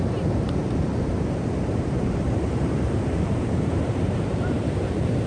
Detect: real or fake fake